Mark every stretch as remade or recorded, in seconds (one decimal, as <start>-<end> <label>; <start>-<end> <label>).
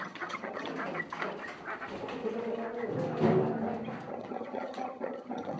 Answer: 0.0-0.7 remade; 0.7-4.1 recorded; 4.1-5.6 remade